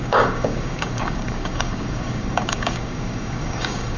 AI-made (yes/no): yes